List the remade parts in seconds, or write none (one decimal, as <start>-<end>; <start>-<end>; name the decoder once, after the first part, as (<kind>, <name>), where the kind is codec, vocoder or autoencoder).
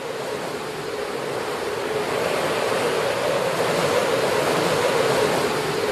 none